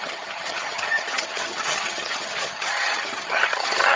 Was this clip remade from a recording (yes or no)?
yes